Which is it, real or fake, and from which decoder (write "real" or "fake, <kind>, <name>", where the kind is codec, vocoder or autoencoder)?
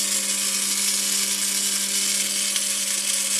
real